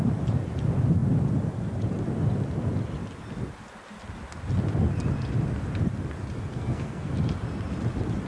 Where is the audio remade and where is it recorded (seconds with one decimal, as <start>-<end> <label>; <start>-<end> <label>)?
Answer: 0.0-6.5 recorded; 6.5-7.1 remade; 7.1-8.3 recorded